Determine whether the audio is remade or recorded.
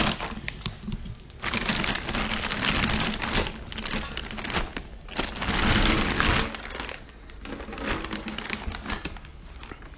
recorded